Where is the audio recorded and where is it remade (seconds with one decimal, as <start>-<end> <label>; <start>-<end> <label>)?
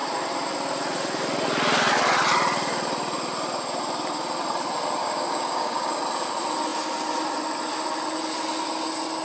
0.0-5.0 recorded; 5.0-6.0 remade; 6.0-9.2 recorded